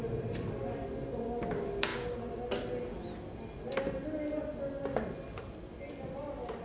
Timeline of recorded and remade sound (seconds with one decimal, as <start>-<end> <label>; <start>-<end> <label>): 0.0-1.9 remade; 1.9-5.9 recorded; 5.9-6.6 remade